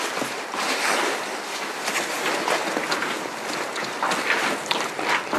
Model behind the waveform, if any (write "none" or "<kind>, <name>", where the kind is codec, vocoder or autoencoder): none